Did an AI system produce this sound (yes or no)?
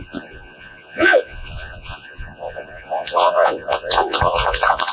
yes